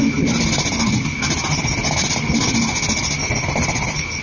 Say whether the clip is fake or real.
real